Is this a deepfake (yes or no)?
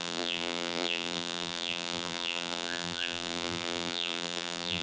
yes